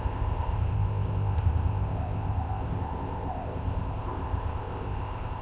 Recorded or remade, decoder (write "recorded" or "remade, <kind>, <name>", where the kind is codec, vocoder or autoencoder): remade, codec, ZipCodec